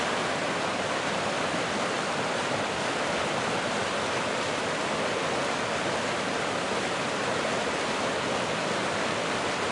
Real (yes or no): yes